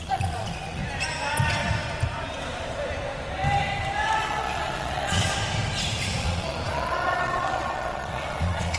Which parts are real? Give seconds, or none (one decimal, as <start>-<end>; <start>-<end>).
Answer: 0.8-4.2; 5.3-6.2